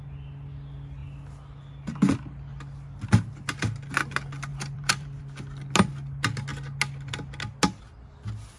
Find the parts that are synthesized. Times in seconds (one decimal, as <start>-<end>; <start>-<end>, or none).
4.5-5.2